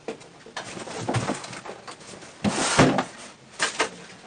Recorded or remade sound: recorded